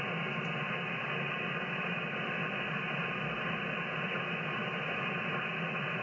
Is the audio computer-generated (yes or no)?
no